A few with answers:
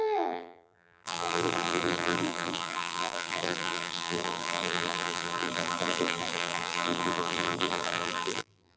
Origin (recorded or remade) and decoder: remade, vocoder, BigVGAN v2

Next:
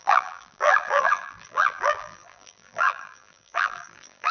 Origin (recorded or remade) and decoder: remade, vocoder, BigVGAN v2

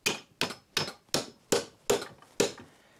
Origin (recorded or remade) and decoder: recorded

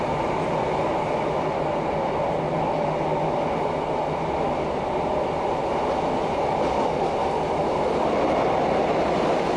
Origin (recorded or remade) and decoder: recorded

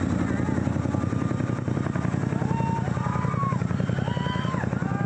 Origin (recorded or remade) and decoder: recorded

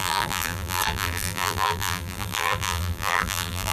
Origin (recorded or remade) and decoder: remade, vocoder, BigVGAN v2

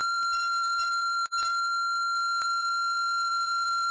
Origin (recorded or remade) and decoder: remade, vocoder, BigVGAN v2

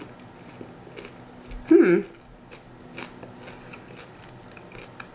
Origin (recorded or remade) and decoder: recorded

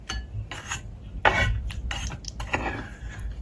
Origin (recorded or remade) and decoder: recorded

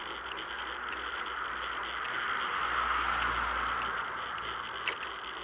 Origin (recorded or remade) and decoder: recorded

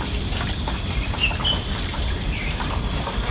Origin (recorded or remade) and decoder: remade, vocoder, BigVGAN v2